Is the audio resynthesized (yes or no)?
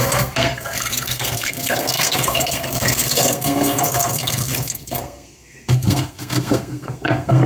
yes